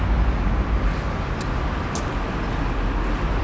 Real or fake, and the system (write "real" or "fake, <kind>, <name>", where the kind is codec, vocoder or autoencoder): real